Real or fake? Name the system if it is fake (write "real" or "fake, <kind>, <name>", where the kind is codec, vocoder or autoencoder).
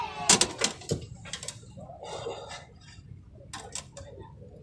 real